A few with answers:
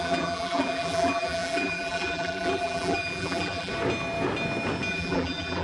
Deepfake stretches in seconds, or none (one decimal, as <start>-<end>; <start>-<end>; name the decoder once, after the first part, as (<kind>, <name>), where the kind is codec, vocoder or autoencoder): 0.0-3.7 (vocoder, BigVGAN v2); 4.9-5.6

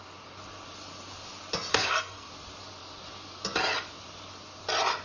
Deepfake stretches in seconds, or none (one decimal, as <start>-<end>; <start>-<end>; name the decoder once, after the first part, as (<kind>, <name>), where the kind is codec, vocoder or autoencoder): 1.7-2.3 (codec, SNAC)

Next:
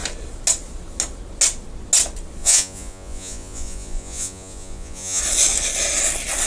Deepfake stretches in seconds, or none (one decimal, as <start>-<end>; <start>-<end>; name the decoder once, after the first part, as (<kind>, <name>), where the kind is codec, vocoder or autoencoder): 2.4-5.2 (vocoder, Vocos)